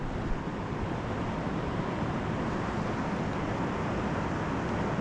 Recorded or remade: recorded